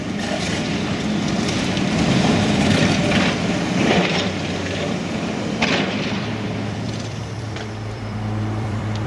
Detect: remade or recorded remade